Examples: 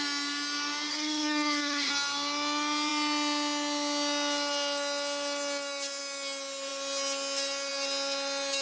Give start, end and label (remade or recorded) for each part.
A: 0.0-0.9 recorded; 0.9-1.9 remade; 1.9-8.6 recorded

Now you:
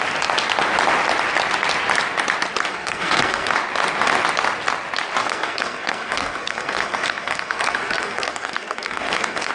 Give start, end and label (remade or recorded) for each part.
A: 0.0-2.7 recorded; 2.7-3.5 remade; 3.5-5.2 recorded; 5.2-9.5 remade